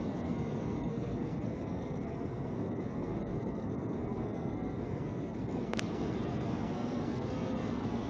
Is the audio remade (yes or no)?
yes